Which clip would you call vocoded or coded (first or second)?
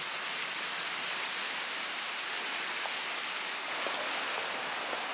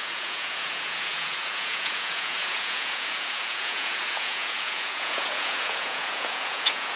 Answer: second